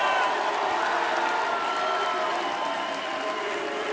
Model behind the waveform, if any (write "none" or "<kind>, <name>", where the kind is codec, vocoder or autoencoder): none